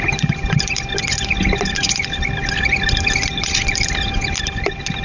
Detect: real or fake real